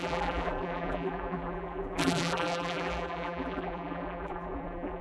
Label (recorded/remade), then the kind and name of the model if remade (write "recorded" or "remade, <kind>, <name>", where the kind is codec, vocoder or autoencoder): remade, vocoder, BigVGAN v2